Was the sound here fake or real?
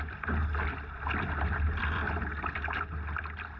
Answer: real